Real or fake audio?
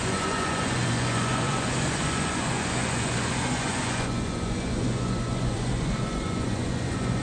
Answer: fake